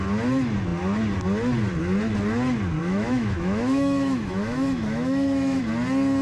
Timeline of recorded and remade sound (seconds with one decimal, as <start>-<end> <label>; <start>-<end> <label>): 0.0-2.8 recorded; 2.8-5.6 remade; 5.6-6.2 recorded